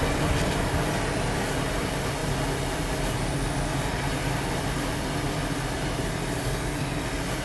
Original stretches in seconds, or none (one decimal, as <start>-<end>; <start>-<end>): 0.0-7.4